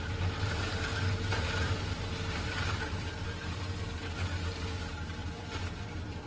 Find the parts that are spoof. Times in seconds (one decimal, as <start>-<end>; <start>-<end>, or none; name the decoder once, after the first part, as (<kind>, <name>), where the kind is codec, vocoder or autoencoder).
0.9-3.5 (vocoder, BigVGAN v2); 5.2-6.3